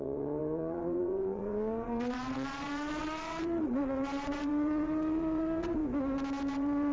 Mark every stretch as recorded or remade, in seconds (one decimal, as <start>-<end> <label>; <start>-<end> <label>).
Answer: 0.0-5.8 remade; 5.8-6.5 recorded; 6.5-6.9 remade